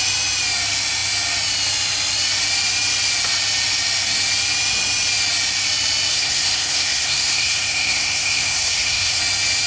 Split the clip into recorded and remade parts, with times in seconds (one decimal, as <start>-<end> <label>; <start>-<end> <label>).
0.0-6.1 recorded; 6.1-9.2 remade; 9.2-9.7 recorded